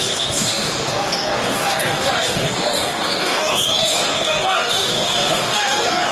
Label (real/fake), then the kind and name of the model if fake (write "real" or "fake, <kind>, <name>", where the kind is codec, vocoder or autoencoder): fake, codec, DAC